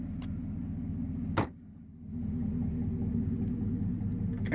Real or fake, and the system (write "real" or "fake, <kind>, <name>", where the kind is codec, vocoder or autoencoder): real